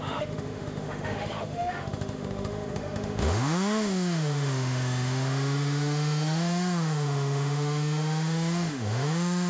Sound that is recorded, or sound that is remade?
remade